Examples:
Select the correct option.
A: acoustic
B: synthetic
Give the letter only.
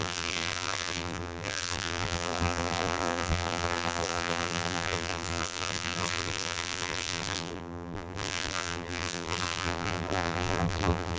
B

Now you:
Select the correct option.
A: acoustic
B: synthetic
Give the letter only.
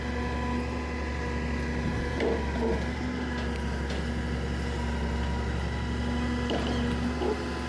A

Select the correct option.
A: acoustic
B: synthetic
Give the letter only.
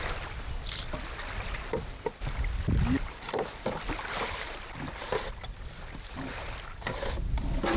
A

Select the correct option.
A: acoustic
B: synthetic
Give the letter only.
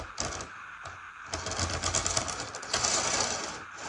A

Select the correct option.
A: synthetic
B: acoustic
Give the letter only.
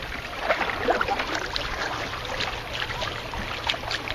A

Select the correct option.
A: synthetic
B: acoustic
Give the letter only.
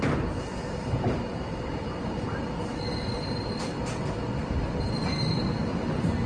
B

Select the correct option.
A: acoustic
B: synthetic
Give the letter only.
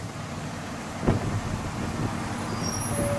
A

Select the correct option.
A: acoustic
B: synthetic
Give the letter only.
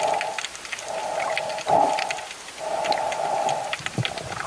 A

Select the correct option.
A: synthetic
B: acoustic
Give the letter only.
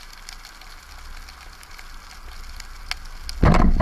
B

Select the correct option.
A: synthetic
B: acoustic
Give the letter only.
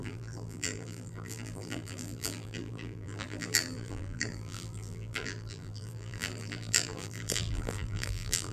A